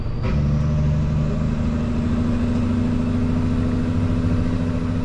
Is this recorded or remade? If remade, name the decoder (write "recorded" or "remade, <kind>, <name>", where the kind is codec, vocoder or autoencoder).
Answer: recorded